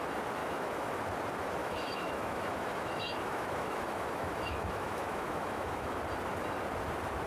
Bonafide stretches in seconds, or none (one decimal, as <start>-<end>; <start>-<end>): 0.0-0.4; 1.0-1.6; 6.0-7.3